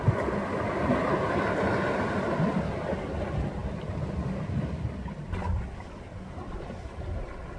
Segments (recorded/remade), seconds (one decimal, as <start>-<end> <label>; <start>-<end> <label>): 0.0-7.6 recorded